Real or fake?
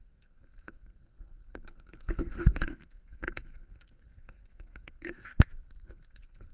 fake